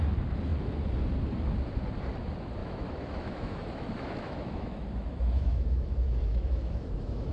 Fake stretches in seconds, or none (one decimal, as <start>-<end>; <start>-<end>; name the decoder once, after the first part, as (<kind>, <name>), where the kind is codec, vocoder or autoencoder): 2.6-7.3 (autoencoder, DAC-VAE)